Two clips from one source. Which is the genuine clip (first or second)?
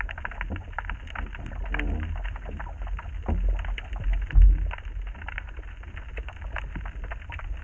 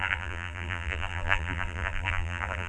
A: first